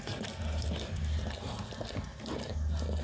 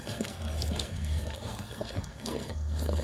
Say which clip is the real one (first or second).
first